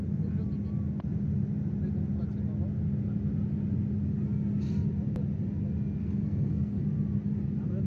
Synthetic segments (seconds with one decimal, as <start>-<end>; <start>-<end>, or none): 6.0-6.8